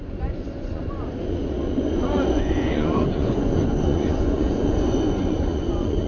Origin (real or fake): fake